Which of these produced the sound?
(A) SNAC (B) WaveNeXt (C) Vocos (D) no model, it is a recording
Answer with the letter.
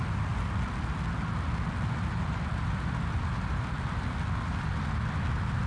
D